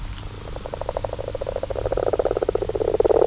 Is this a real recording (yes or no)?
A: yes